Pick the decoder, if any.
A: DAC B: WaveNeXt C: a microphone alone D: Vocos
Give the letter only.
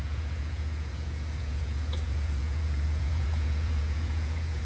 D